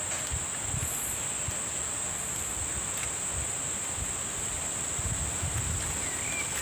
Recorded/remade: recorded